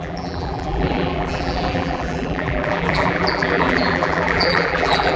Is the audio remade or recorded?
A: remade